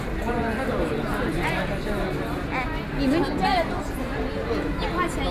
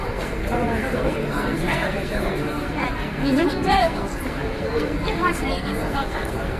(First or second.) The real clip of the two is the first